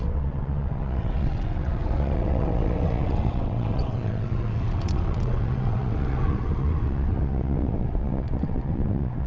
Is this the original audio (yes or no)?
no